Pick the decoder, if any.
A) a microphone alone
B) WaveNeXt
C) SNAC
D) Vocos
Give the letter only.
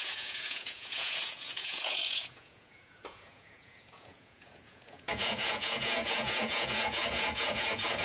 D